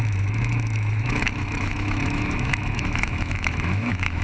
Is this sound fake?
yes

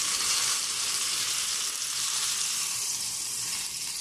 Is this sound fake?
yes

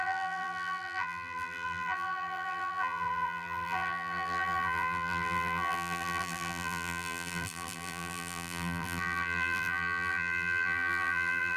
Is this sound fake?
yes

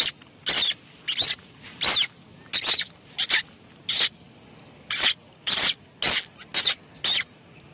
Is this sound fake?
no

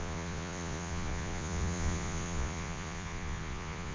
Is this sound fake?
yes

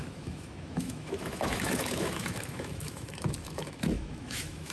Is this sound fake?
yes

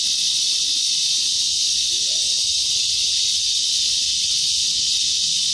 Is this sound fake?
yes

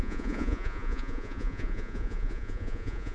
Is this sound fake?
yes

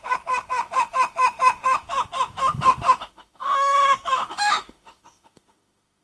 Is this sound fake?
yes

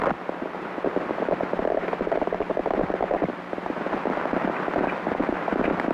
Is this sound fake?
no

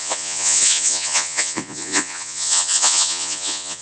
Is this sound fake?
yes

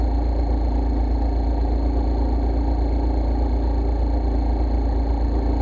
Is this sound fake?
no